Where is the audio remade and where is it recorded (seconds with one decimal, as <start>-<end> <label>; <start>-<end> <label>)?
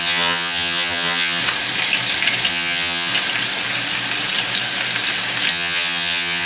0.0-1.4 remade; 1.4-2.5 recorded; 2.5-3.1 remade; 3.1-5.5 recorded; 5.5-6.5 remade